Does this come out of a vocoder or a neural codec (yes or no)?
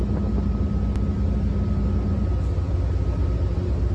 no